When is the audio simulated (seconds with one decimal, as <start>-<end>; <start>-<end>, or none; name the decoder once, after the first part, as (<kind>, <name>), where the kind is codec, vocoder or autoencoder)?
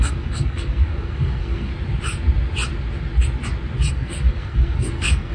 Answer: 0.0-1.7 (codec, SNAC); 3.9-5.3